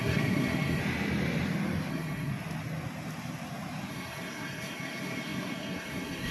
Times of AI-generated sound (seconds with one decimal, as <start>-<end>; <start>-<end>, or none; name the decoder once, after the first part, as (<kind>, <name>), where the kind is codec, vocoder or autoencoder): 0.0-0.8 (codec, SNAC); 1.9-2.3; 3.9-6.3